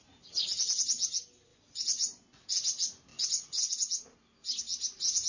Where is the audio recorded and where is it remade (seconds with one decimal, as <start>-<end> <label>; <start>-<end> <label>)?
0.0-1.5 recorded; 1.5-2.5 remade; 2.5-3.1 recorded; 3.1-3.7 remade; 3.7-5.3 recorded